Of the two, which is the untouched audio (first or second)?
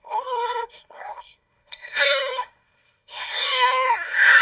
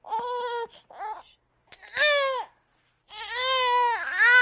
second